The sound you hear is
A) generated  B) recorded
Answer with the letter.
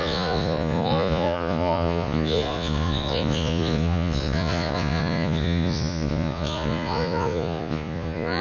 A